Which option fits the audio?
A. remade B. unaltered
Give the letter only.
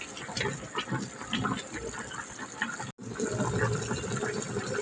B